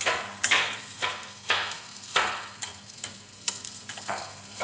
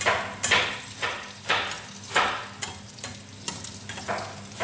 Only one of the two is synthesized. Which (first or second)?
first